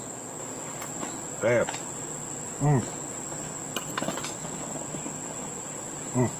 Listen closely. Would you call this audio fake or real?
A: real